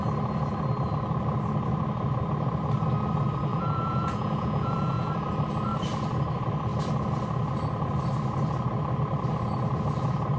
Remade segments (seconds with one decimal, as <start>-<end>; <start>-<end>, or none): 3.5-5.1